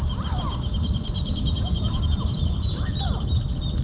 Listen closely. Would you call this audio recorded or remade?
recorded